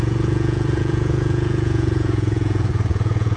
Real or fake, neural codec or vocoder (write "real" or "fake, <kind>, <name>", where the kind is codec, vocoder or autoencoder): fake, vocoder, Vocos